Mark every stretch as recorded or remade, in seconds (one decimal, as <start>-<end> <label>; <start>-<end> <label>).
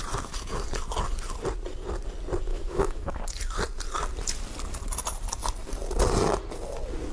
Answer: 0.0-2.5 recorded; 2.5-3.2 remade; 3.2-7.1 recorded